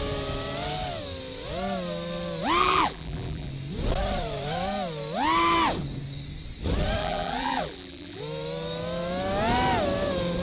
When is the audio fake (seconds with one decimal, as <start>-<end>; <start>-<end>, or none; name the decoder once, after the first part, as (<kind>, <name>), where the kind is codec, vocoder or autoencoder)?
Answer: 2.6-3.5 (vocoder, BigVGAN v2); 7.0-8.2